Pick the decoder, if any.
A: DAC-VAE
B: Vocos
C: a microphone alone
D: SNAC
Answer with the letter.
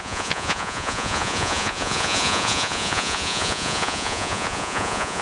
B